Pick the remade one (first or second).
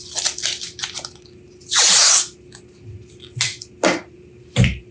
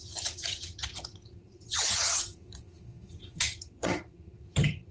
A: second